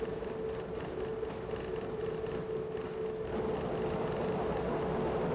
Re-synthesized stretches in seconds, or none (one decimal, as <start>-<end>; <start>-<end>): none